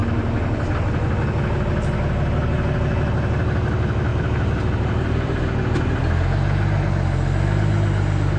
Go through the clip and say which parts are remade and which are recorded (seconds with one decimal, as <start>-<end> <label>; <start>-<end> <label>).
0.0-4.1 recorded; 4.1-5.4 remade; 5.4-8.4 recorded